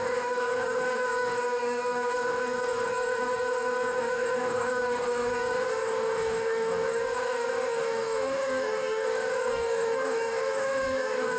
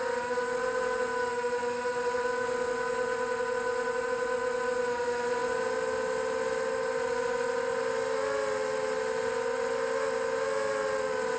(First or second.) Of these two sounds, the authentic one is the second